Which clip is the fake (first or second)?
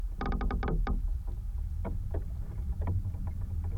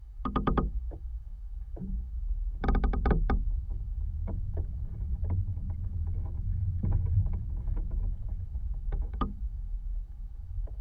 second